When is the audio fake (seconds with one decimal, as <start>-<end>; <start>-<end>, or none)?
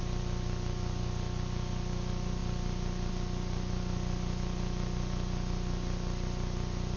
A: none